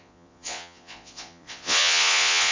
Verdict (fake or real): fake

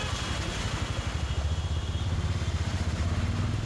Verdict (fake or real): real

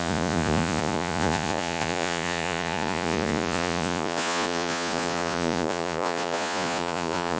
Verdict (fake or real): fake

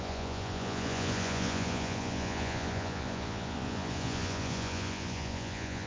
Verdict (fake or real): fake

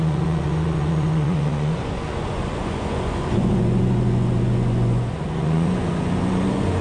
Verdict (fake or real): fake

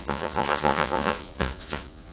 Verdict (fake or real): fake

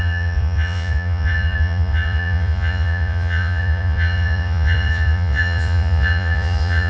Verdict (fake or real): fake